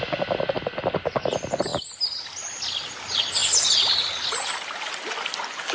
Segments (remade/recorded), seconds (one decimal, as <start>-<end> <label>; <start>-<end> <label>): 0.0-5.7 recorded